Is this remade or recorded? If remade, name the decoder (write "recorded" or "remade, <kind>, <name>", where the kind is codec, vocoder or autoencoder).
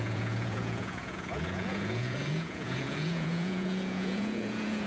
remade, vocoder, Vocos